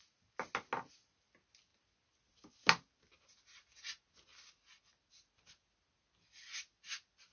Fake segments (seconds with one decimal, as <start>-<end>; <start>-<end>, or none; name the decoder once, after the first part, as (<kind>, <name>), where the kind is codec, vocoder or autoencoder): none

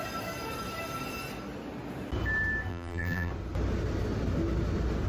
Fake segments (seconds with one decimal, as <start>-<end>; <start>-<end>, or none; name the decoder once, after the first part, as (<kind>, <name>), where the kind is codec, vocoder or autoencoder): 2.7-3.3 (vocoder, BigVGAN v2)

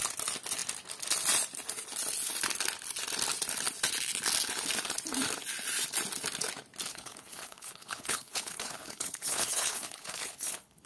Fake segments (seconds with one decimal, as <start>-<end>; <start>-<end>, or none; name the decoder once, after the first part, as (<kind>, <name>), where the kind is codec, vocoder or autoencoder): 6.9-10.9 (codec, HILCodec)

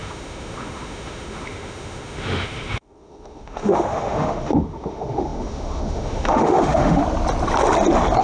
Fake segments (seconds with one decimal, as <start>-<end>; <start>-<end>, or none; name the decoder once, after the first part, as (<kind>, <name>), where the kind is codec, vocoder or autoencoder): 0.0-7.0 (autoencoder, DAC-VAE)

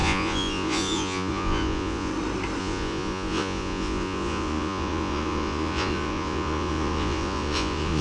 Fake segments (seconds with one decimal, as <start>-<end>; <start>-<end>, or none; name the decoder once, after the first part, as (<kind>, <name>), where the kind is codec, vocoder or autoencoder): 0.0-2.1 (vocoder, Vocos); 2.6-8.0

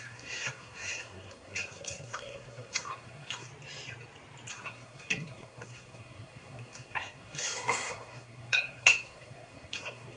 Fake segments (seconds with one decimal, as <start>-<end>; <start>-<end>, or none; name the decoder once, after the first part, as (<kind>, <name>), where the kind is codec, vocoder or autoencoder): 0.0-3.5 (codec, SNAC); 4.5-10.2